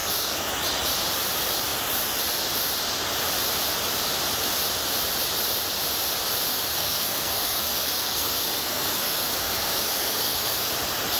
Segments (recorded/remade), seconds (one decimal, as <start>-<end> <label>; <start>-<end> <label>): 0.0-0.5 remade; 0.5-6.5 recorded; 6.5-10.7 remade; 10.7-11.2 recorded